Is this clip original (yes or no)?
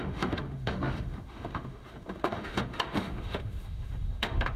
no